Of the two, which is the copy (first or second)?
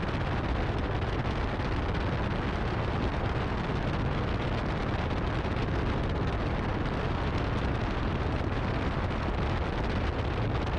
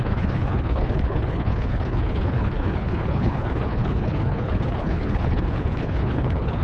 second